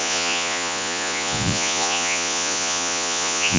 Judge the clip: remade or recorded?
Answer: remade